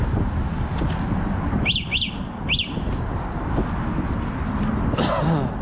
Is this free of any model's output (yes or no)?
yes